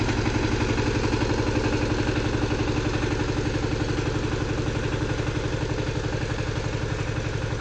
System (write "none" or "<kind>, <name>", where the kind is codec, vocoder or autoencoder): none